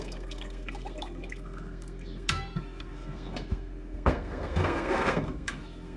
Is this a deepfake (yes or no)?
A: yes